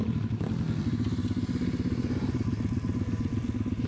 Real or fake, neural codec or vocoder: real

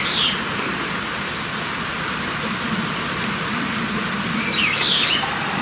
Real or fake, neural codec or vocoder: real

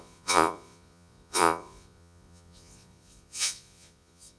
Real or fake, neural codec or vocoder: fake, vocoder, Vocos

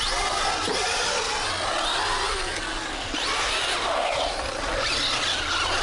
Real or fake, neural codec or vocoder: real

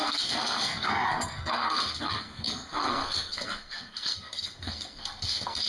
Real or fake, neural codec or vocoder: fake, codec, SNAC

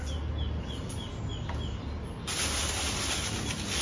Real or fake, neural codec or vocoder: real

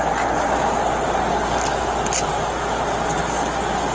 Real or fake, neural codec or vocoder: real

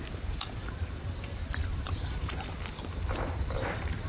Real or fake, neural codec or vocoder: fake, vocoder, BigVGAN v2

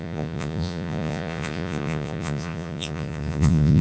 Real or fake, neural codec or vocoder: fake, vocoder, Vocos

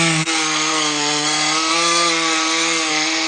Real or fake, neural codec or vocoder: fake, codec, SNAC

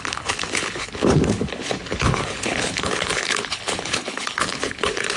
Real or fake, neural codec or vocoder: fake, codec, HILCodec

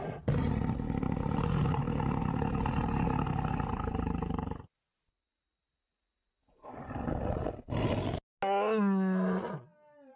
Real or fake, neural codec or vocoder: real